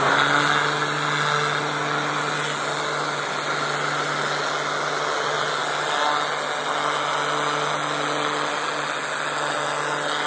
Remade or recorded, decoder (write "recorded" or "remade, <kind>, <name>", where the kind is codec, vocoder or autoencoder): recorded